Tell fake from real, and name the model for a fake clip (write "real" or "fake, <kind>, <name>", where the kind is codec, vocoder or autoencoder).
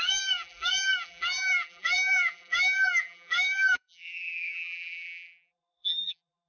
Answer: fake, vocoder, BigVGAN v2